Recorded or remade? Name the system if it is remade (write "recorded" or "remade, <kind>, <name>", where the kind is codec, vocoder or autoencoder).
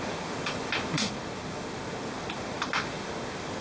recorded